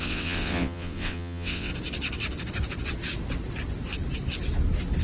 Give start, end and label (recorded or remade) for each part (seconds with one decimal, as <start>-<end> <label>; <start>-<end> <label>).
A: 0.0-1.7 remade; 1.7-5.0 recorded